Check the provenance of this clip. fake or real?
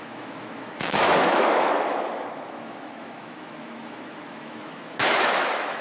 fake